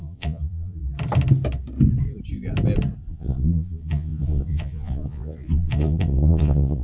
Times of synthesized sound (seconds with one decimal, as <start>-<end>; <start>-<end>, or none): 0.0-0.8; 3.1-6.8

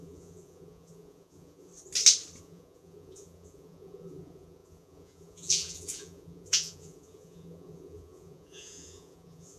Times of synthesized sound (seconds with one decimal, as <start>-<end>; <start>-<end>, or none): 0.0-1.7; 2.4-9.6

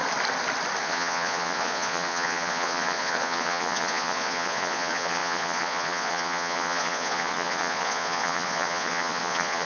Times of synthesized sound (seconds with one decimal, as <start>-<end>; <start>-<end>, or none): 0.8-9.6

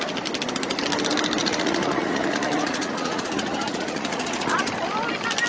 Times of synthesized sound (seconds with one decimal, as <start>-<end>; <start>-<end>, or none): 1.4-4.7

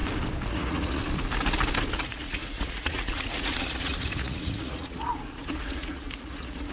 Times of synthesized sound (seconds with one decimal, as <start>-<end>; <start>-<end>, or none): 0.5-1.0; 2.0-6.7